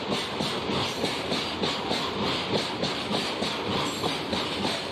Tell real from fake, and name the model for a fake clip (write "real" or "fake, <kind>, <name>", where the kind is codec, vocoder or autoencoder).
real